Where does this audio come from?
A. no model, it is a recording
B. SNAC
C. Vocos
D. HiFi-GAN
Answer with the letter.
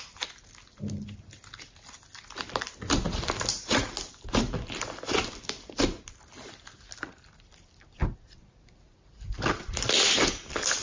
A